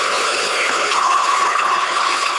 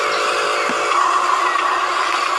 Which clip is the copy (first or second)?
first